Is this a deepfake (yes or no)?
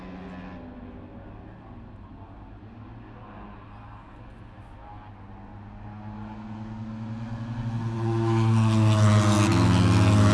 no